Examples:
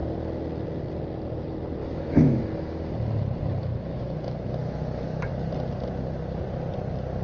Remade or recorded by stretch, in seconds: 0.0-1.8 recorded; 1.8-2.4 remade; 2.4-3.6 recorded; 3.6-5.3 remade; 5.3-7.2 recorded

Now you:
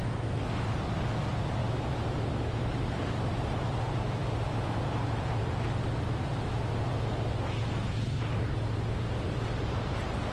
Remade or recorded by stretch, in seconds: 0.0-0.7 remade; 0.7-10.3 recorded

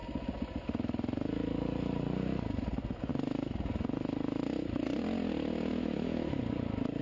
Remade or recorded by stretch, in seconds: 0.0-5.7 recorded; 5.7-6.4 remade; 6.4-7.0 recorded

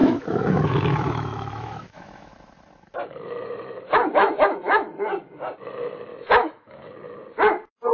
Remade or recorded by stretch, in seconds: 0.0-2.3 remade; 2.3-4.2 recorded; 4.2-4.9 remade; 4.9-6.1 recorded; 6.1-6.9 remade; 6.9-7.9 recorded